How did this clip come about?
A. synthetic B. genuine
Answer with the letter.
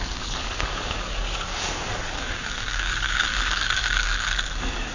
A